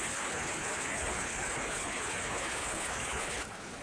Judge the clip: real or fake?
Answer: fake